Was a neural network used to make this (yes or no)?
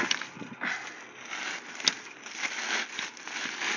no